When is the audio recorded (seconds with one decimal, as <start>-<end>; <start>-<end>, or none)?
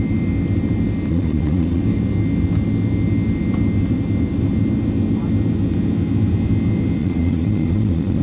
0.0-1.1; 1.8-7.0